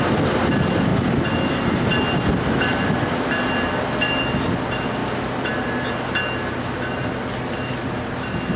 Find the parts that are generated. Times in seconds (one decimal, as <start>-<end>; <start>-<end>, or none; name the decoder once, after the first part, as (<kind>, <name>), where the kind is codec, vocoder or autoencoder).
none